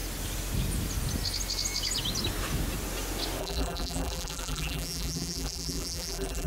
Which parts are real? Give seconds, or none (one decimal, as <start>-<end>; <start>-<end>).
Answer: 0.0-3.4